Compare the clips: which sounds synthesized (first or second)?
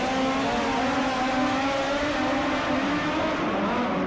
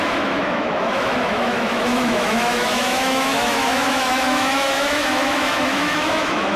second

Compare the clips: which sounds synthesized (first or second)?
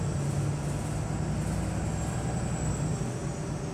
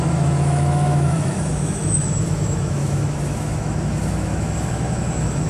second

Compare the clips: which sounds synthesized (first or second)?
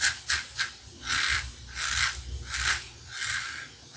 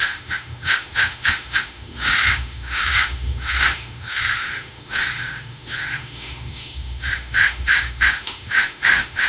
second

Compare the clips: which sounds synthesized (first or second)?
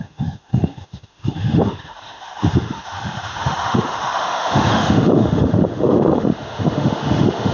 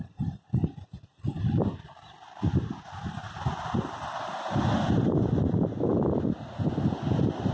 first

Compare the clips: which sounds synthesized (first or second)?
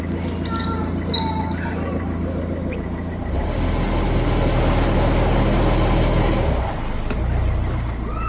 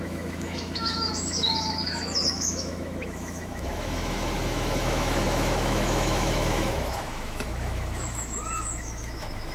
second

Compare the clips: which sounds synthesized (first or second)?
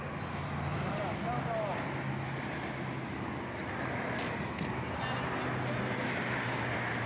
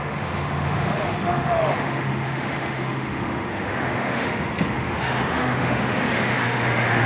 second